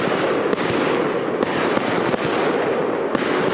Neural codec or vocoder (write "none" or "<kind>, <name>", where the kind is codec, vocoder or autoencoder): none